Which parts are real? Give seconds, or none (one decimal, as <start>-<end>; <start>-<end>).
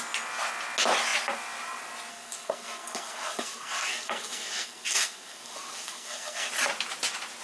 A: 0.0-2.1; 6.5-7.4